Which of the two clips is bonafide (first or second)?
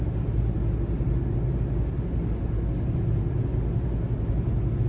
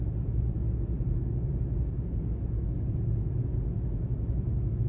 first